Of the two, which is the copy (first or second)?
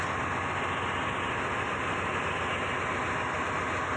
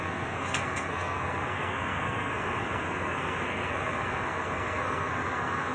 second